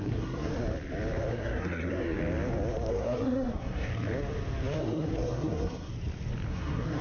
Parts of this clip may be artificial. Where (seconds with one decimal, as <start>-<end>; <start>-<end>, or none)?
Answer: 0.0-0.5; 1.3-2.2; 2.9-3.9; 4.8-5.9; 6.5-7.0